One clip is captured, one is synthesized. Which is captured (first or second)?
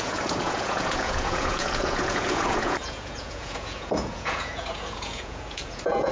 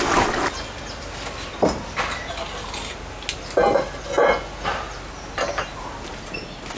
second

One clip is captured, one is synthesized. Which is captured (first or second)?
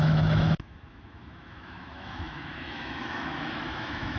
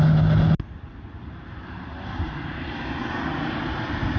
second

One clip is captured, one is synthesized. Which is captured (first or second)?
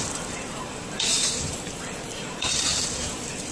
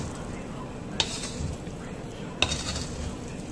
second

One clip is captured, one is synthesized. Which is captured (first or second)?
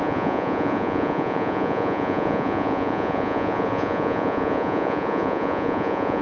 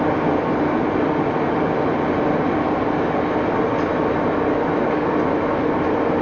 second